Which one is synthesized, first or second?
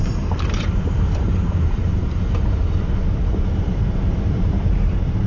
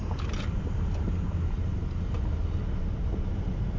first